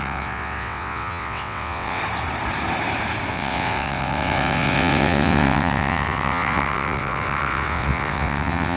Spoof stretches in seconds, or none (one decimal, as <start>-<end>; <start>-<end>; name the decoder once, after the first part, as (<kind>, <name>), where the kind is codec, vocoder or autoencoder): 0.0-2.0 (vocoder, WaveNeXt); 3.3-8.8